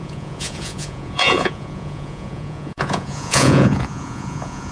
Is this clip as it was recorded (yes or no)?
no